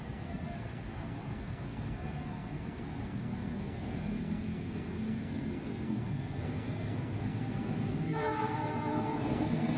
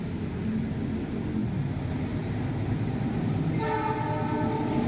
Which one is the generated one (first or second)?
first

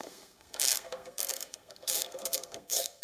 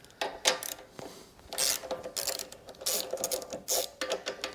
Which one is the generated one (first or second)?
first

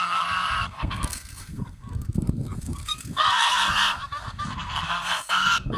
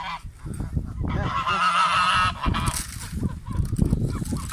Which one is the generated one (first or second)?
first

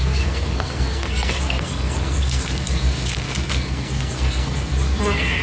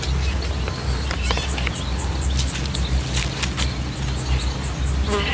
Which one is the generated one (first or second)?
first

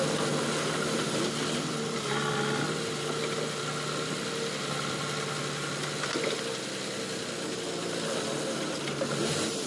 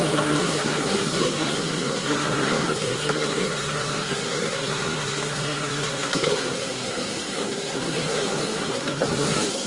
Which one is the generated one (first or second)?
second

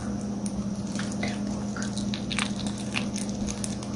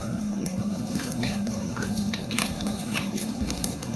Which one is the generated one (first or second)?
second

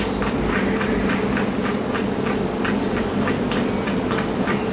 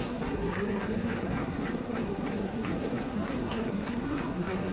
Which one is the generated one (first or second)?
second